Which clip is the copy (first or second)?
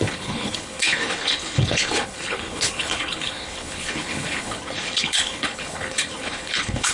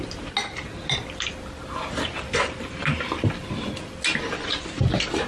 first